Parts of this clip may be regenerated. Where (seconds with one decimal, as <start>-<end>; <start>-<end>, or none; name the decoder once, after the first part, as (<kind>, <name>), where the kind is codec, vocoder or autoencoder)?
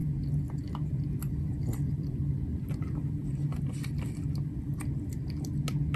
1.6-2.7 (vocoder, BigVGAN v2); 3.2-4.9